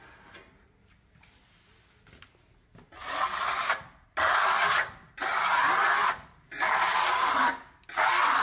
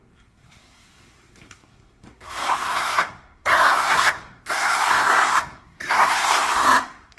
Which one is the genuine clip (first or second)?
first